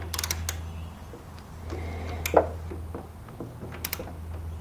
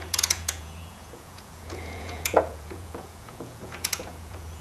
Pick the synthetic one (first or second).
second